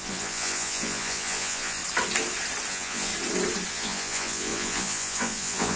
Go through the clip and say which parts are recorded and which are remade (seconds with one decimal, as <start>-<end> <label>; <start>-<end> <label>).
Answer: 0.0-1.8 remade; 1.8-2.7 recorded; 2.7-3.1 remade; 3.1-3.7 recorded; 3.7-5.8 remade